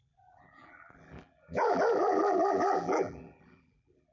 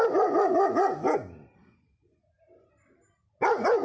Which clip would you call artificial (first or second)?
first